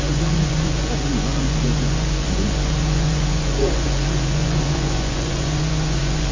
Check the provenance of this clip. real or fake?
fake